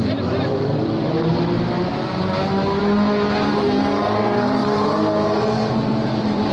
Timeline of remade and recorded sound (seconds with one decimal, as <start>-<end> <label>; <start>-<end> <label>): 0.0-1.3 remade; 1.3-1.9 recorded; 1.9-2.8 remade; 2.8-4.0 recorded; 4.0-6.5 remade